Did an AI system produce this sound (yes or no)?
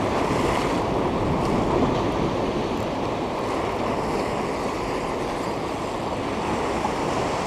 no